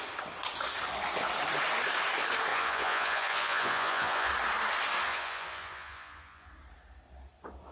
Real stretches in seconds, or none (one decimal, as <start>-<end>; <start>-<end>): 0.0-2.5; 4.3-5.1; 6.5-7.7